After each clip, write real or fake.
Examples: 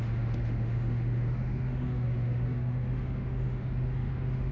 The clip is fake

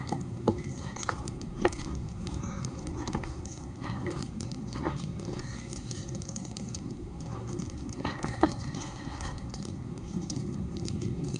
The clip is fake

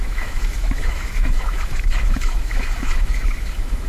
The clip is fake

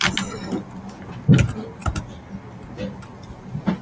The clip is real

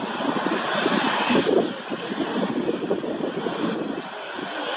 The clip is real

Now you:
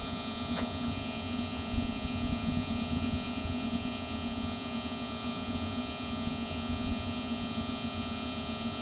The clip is fake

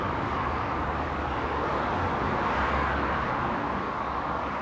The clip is fake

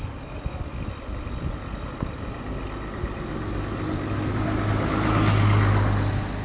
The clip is real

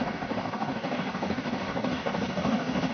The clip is fake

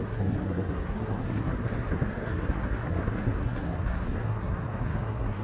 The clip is fake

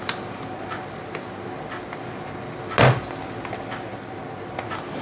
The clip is real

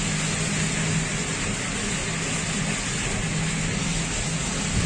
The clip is real